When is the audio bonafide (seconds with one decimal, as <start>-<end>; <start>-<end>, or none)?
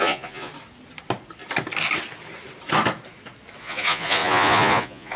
0.5-3.6